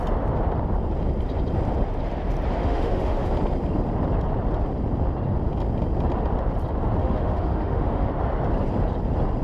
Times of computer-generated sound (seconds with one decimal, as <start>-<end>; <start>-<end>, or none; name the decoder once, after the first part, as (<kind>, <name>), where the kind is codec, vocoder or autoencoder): 2.6-3.3 (autoencoder, DAC-VAE); 7.0-8.1